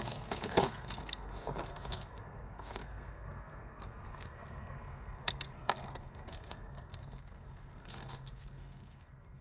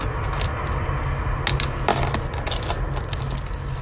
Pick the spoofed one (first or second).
first